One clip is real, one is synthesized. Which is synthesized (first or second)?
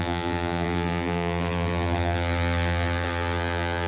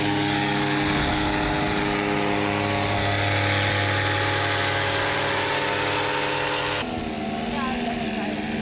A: first